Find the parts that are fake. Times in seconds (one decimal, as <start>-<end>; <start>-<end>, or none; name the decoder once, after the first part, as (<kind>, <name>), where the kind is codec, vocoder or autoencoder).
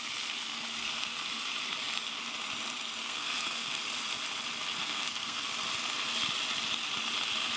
3.0-3.8 (codec, SNAC); 4.8-5.5